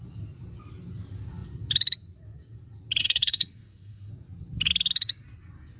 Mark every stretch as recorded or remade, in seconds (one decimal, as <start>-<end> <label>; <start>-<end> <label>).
0.0-3.0 recorded; 3.0-4.1 remade; 4.1-5.8 recorded